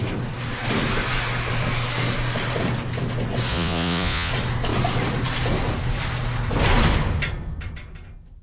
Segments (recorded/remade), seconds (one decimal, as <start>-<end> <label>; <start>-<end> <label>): 0.0-3.5 recorded; 3.5-4.3 remade; 4.3-8.4 recorded